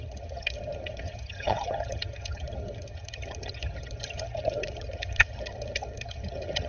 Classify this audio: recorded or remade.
remade